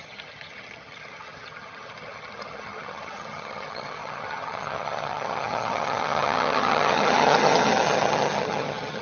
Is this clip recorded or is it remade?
remade